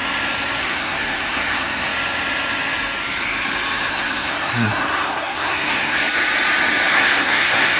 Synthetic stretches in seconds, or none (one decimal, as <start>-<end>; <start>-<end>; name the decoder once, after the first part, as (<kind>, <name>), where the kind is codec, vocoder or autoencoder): 0.6-1.9 (codec, SNAC); 3.9-6.0; 6.9-7.8